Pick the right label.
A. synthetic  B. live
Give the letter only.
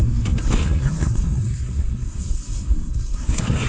A